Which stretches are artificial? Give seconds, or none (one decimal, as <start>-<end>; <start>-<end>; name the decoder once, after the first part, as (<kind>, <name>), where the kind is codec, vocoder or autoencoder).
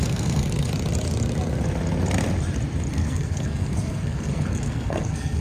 0.0-0.7 (codec, SNAC); 2.9-5.4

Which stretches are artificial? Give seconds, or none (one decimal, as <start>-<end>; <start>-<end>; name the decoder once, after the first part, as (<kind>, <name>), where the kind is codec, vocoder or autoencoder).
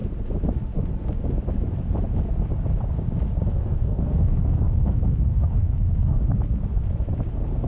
3.5-6.2 (codec, SNAC)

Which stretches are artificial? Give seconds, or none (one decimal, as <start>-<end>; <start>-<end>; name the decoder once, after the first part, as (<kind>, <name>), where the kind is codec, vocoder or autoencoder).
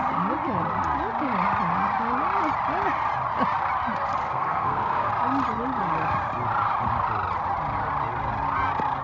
4.2-5.1 (codec, SNAC)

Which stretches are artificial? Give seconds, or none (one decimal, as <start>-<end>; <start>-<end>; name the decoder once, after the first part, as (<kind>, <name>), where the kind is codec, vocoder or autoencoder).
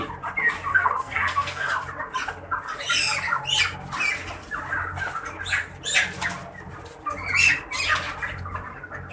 0.7-1.7 (codec, SNAC)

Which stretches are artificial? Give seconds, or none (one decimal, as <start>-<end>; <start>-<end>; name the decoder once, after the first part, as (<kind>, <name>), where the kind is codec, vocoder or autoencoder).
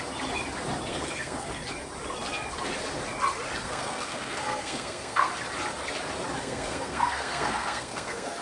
0.9-1.6 (codec, SNAC); 3.6-5.3; 6.4-8.4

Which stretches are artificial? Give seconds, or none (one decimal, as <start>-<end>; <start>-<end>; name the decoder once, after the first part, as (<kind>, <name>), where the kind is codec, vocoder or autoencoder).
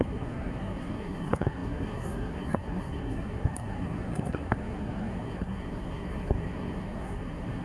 0.0-7.6 (codec, SNAC)